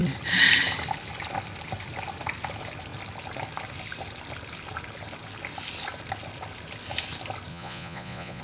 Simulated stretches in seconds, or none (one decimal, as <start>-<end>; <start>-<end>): 7.5-8.4